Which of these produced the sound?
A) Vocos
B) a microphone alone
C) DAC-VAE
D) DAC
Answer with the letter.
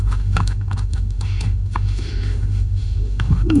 C